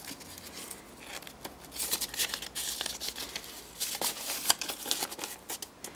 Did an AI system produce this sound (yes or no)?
no